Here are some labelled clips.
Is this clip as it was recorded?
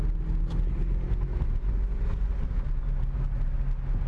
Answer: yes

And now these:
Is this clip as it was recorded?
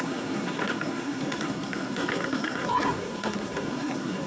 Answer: no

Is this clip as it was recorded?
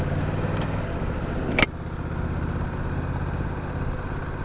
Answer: yes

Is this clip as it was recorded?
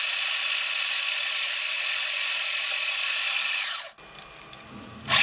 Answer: yes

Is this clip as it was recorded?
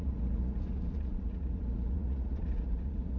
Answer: no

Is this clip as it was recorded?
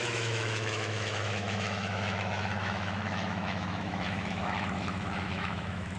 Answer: no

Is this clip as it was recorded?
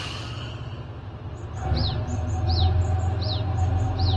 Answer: yes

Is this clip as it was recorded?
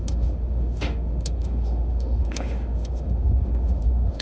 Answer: no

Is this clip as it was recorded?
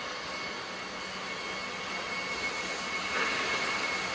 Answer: yes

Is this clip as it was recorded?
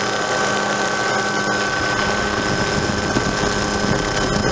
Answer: yes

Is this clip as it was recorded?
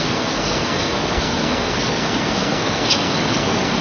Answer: no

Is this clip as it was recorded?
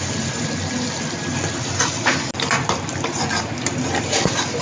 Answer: yes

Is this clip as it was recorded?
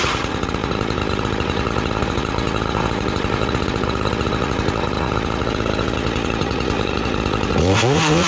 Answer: no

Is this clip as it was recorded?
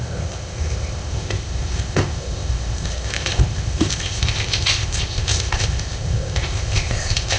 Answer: no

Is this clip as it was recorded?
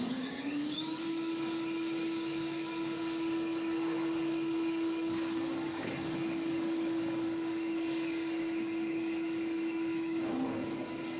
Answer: no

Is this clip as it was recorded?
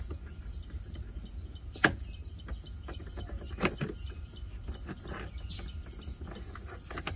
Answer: yes